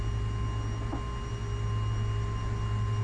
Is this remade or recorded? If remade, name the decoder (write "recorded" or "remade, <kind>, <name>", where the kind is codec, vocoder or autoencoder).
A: recorded